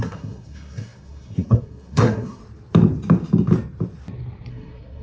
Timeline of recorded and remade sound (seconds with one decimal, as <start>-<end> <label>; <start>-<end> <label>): 0.0-2.4 remade; 2.4-4.5 recorded; 4.5-5.0 remade